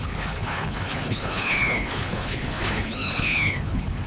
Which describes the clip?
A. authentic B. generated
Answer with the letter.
B